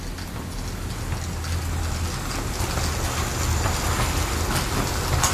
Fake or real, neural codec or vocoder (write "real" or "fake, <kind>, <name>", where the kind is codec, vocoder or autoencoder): real